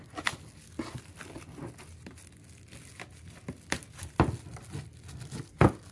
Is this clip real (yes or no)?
yes